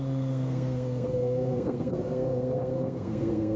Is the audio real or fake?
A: fake